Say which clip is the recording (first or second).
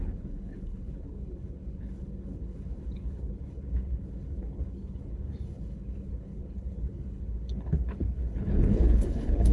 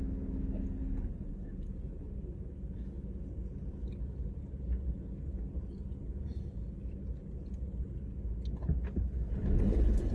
second